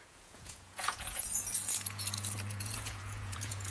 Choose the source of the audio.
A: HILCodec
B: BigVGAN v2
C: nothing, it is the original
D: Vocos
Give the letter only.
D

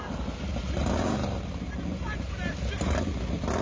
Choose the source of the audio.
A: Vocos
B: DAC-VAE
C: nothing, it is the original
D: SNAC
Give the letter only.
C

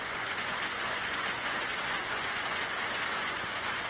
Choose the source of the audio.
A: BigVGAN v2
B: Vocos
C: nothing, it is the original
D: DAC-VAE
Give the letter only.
B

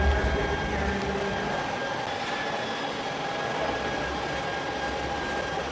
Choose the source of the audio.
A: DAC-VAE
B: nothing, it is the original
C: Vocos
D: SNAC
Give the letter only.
B